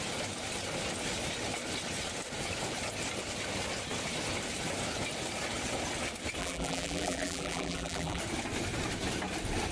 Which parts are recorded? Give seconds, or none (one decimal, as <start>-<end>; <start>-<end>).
0.0-6.4; 8.2-9.7